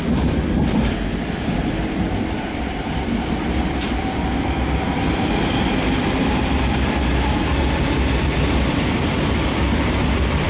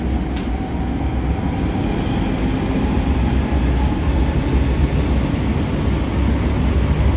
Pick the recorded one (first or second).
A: second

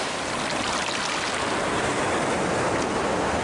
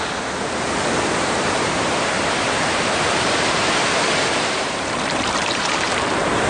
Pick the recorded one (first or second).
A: first